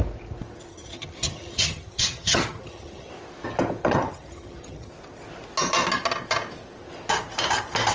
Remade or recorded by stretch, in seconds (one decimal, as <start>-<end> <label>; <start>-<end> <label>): 0.0-0.7 recorded; 0.7-3.1 remade; 3.1-3.8 recorded; 3.8-4.9 remade; 4.9-7.9 recorded